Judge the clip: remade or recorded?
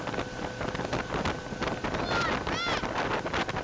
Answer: recorded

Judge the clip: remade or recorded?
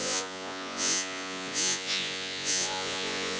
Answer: remade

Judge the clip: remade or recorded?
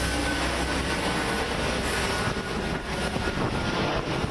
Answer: recorded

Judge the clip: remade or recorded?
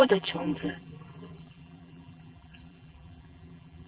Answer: remade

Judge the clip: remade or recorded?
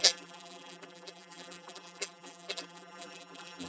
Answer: remade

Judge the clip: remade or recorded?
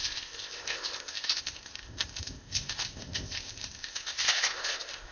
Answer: remade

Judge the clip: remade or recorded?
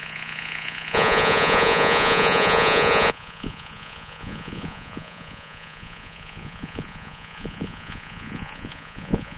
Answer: remade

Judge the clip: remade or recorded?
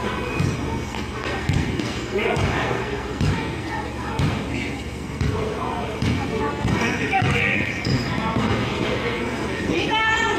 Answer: remade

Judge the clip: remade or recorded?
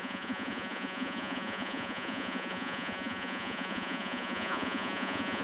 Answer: remade